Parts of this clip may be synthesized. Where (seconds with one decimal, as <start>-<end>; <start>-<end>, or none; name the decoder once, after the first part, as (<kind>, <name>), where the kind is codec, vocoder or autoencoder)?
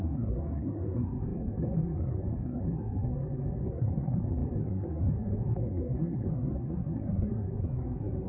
0.0-8.3 (codec, SNAC)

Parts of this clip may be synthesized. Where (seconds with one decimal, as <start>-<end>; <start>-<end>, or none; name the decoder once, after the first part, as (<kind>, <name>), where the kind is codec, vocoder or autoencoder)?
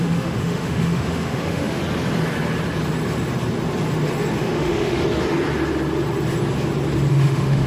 0.0-1.8 (autoencoder, DAC-VAE); 4.4-5.0; 7.1-7.7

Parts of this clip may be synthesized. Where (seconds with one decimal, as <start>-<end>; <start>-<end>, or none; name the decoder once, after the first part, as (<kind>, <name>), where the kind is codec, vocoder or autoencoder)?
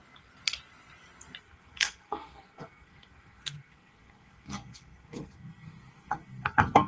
1.4-6.9 (codec, SNAC)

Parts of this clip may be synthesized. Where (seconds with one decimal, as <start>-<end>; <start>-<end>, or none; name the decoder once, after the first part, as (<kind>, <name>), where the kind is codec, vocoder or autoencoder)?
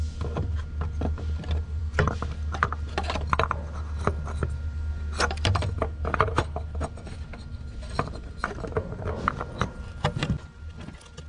none